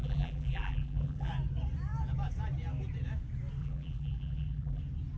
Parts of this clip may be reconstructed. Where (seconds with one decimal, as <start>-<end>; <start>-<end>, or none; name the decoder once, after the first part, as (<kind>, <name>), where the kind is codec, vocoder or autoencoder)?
0.0-1.3 (vocoder, BigVGAN v2); 3.6-4.8